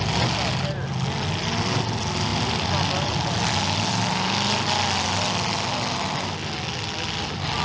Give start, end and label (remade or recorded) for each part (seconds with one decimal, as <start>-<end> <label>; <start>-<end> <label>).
0.0-7.6 recorded